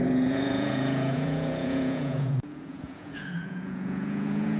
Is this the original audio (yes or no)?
no